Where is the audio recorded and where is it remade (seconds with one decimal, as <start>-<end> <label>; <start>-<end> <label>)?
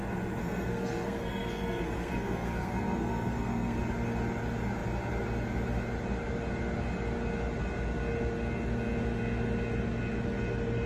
0.0-0.4 recorded; 0.4-3.8 remade; 3.8-10.9 recorded